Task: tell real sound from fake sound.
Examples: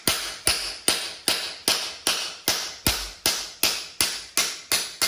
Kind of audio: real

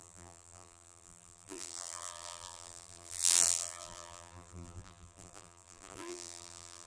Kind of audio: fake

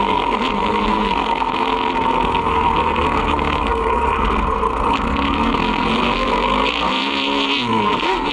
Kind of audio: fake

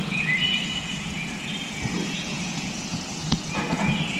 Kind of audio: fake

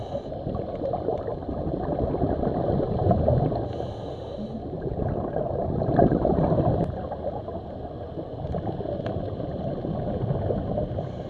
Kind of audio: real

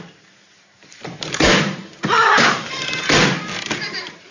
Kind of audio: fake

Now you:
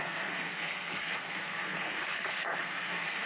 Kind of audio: fake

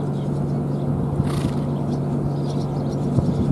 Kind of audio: real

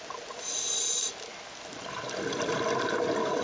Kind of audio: real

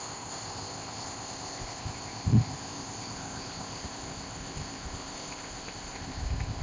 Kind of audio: fake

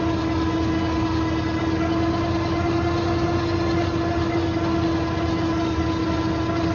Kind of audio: real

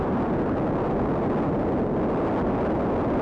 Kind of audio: real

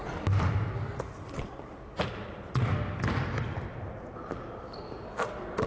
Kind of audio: real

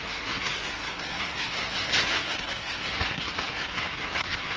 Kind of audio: fake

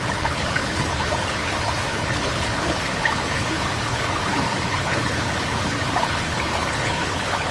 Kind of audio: fake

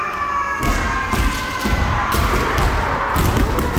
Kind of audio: real